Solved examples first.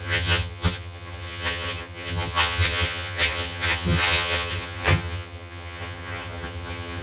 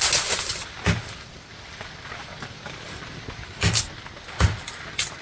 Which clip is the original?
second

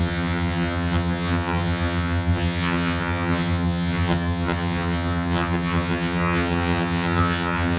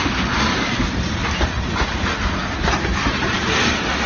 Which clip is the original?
second